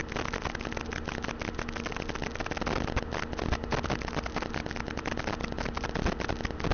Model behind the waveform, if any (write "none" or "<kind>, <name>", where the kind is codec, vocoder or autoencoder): none